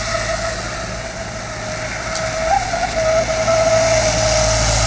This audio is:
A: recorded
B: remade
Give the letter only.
A